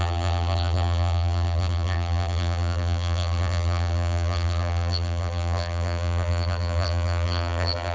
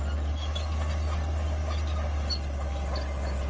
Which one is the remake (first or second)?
first